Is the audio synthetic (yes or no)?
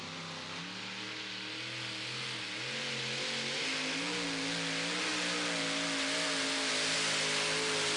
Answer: no